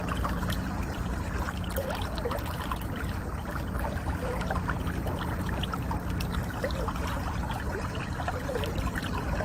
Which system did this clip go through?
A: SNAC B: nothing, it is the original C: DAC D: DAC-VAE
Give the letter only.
B